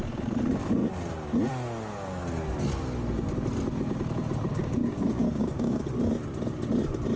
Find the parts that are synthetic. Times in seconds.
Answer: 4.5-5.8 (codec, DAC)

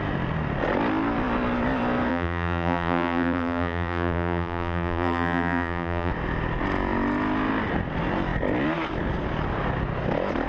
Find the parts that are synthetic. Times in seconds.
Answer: 2.1-6.1 (vocoder, BigVGAN v2)

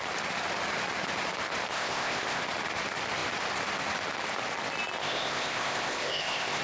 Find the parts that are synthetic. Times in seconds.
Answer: 1.7-2.4 (codec, ZipCodec); 5.0-6.6

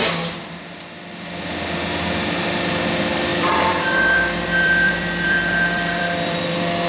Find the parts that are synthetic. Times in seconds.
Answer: 3.3-6.9 (vocoder, BigVGAN v2)